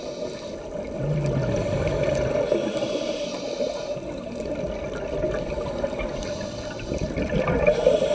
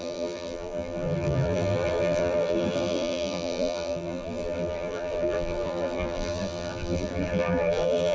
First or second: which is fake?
second